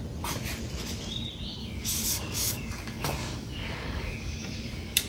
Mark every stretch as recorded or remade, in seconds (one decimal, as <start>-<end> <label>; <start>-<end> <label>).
0.0-1.6 recorded; 1.6-5.1 remade